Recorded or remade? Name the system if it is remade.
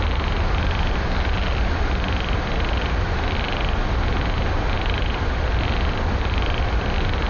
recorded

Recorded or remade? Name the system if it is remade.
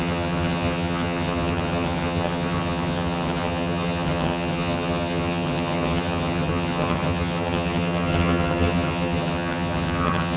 remade, vocoder, HiFi-GAN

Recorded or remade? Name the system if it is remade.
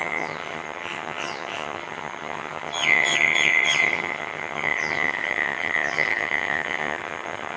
remade, vocoder, HiFi-GAN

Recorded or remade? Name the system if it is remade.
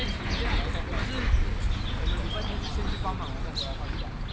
recorded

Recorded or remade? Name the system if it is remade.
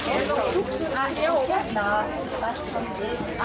recorded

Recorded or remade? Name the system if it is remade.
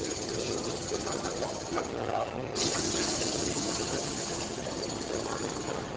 remade, vocoder, HiFi-GAN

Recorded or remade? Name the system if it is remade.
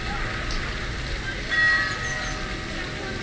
recorded